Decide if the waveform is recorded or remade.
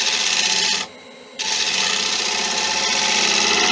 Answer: recorded